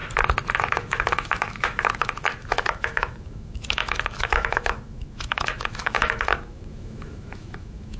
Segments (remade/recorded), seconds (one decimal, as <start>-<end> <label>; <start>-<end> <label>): 0.0-0.7 recorded; 0.7-8.0 remade

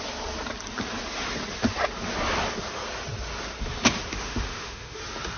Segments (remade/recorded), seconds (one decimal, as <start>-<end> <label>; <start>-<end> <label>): 0.0-4.1 recorded; 4.1-5.0 remade; 5.0-5.4 recorded

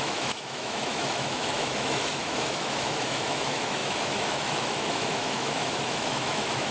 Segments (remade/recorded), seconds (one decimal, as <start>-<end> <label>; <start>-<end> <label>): 0.0-6.7 remade

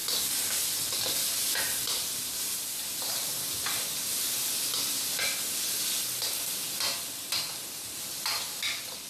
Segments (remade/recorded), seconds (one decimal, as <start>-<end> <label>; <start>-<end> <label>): 0.0-9.1 recorded

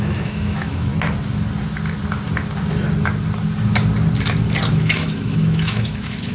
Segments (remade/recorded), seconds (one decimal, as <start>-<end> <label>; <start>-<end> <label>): 0.0-0.9 remade; 0.9-4.7 recorded; 4.7-6.3 remade

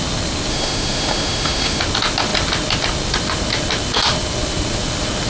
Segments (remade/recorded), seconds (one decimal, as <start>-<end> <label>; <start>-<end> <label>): 0.0-0.5 recorded; 0.5-1.8 remade; 1.8-5.3 recorded